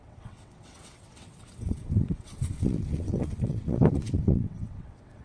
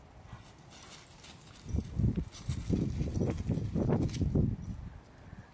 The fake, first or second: first